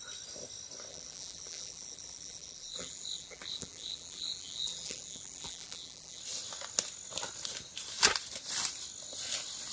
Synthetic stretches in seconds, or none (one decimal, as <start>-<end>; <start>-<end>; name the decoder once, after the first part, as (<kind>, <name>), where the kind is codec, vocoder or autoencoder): 0.9-6.2 (vocoder, BigVGAN v2)